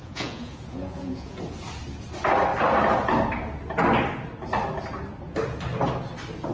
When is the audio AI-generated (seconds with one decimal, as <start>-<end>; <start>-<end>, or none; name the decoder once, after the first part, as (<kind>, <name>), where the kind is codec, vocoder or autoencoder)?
0.0-1.4 (vocoder, Vocos)